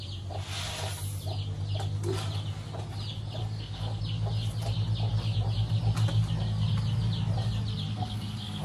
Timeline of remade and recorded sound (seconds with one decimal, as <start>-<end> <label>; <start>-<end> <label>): 0.0-3.4 recorded; 3.4-4.0 remade; 4.0-7.9 recorded; 7.9-8.6 remade